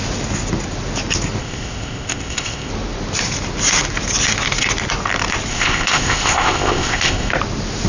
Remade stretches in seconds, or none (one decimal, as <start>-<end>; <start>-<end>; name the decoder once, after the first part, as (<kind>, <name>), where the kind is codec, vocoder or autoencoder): 1.4-2.7 (codec, ZipCodec); 5.5-7.3